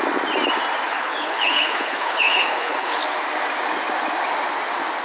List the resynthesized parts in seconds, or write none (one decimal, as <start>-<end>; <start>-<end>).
0.9-3.0